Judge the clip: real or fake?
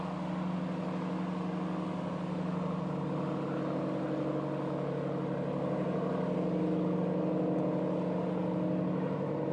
real